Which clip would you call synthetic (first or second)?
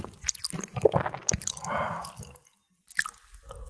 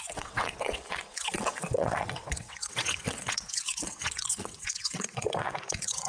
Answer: second